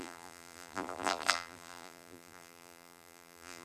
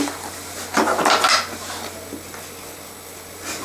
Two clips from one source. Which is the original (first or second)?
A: second